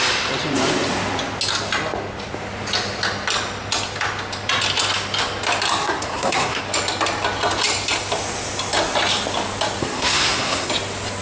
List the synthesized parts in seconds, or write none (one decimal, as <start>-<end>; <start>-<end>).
5.8-6.6; 9.8-10.7